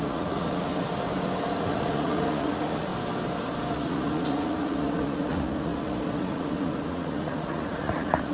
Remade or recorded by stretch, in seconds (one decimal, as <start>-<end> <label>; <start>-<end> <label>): 0.0-0.7 remade; 0.7-1.6 recorded; 1.6-2.9 remade; 2.9-3.7 recorded; 3.7-8.3 remade